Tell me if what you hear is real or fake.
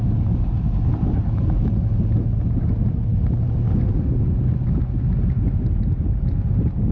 real